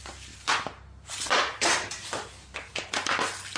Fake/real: real